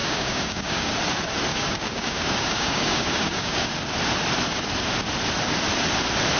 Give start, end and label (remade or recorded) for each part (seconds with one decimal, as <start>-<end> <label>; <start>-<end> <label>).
0.0-0.9 remade; 0.9-1.5 recorded; 1.5-3.7 remade; 3.7-6.4 recorded